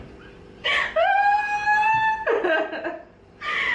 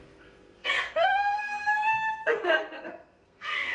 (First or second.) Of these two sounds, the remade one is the second